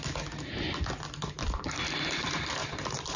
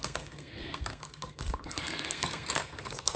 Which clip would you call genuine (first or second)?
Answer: first